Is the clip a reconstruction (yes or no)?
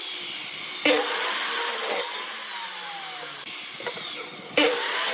no